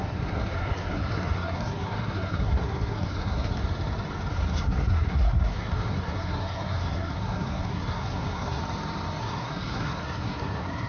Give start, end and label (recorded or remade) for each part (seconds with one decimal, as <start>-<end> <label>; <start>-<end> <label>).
0.0-3.6 remade; 3.6-4.3 recorded; 4.3-8.6 remade; 8.6-9.2 recorded; 9.2-10.9 remade